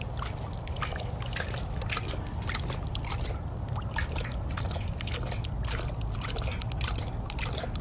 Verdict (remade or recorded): recorded